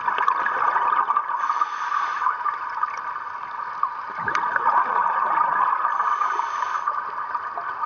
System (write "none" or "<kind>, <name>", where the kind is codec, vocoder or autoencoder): none